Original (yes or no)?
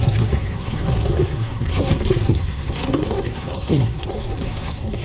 no